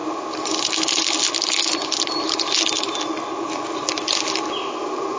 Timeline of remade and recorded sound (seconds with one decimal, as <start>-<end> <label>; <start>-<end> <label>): 0.0-5.2 recorded